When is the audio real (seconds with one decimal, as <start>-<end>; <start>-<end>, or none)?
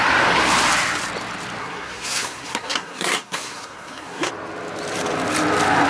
0.0-1.6; 4.3-5.9